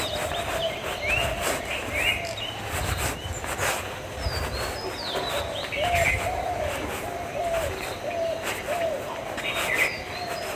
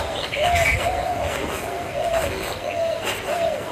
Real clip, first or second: first